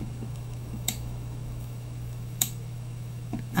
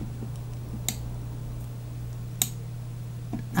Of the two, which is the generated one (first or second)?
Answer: first